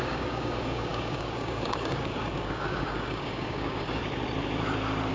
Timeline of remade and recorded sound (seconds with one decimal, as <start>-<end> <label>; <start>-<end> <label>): 0.0-4.0 remade; 4.0-5.1 recorded